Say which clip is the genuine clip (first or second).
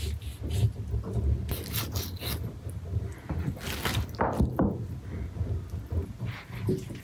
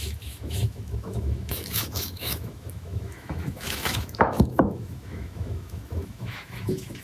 first